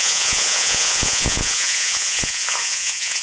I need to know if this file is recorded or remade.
remade